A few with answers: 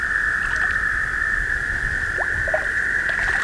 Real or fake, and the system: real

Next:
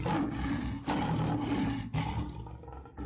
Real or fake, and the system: real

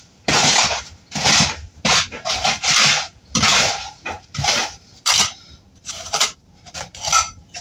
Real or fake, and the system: fake, vocoder, BigVGAN v2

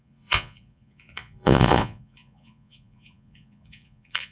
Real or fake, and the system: fake, vocoder, Vocos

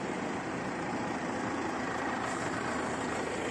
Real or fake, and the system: fake, vocoder, BigVGAN v2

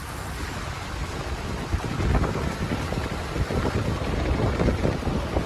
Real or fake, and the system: real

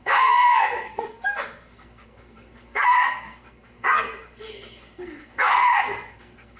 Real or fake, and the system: fake, codec, SNAC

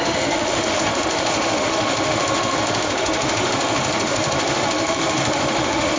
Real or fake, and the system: fake, autoencoder, DAC-VAE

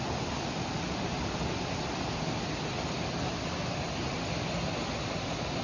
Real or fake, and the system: real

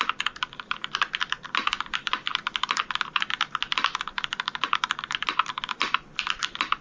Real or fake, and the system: fake, vocoder, BigVGAN v2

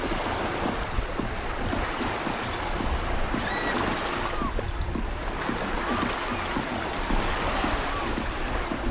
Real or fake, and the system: real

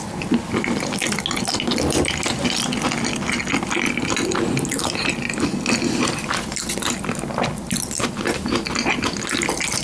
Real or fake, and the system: real